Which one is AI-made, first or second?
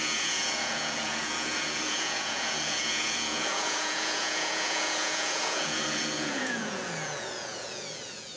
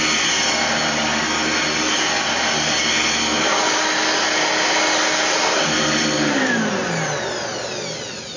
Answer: first